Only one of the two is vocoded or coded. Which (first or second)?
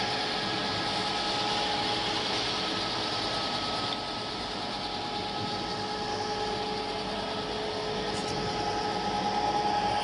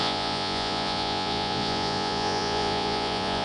second